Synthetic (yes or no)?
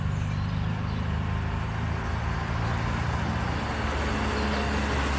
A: no